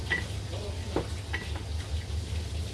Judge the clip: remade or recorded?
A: recorded